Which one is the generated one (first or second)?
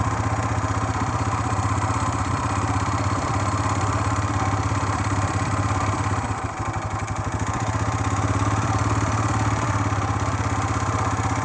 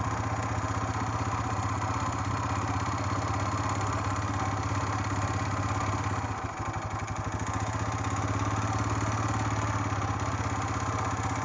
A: first